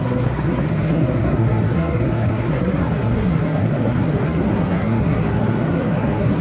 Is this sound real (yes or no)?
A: no